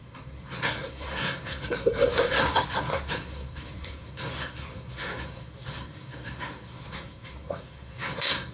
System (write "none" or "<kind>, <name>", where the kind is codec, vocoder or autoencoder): codec, SNAC